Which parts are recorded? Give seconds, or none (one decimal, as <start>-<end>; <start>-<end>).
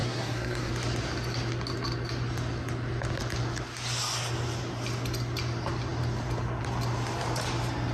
0.7-7.9